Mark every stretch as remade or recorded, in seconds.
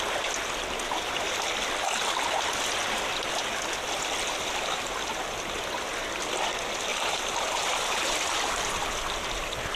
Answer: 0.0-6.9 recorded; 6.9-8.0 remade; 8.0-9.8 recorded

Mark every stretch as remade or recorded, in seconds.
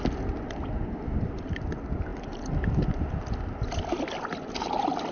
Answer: 0.0-5.1 recorded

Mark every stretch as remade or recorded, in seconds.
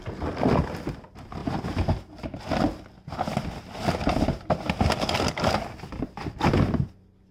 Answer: 0.0-7.3 recorded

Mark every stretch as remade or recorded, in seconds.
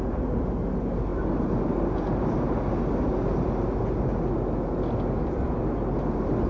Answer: 0.0-6.5 recorded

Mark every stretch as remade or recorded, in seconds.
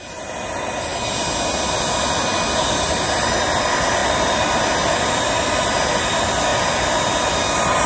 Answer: 0.0-7.9 recorded